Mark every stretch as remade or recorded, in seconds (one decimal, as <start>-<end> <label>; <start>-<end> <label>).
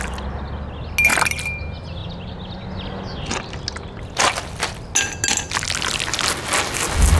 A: 0.0-7.2 recorded